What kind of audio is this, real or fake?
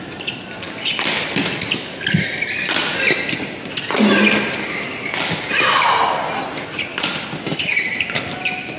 real